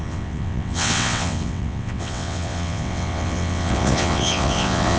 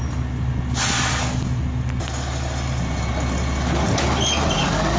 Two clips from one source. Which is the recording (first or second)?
second